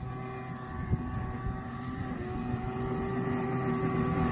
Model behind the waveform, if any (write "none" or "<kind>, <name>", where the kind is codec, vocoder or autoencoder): none